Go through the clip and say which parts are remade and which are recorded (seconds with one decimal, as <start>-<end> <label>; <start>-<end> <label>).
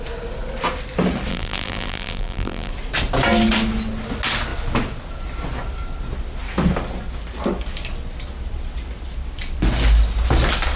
0.0-1.3 recorded; 1.3-2.7 remade; 2.7-10.8 recorded